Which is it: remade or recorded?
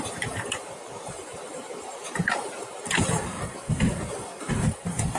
remade